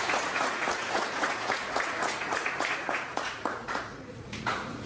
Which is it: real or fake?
fake